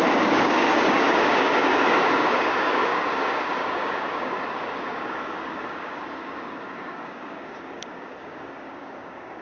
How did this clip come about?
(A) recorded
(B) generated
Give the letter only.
B